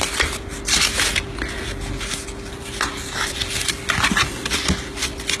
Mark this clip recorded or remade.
recorded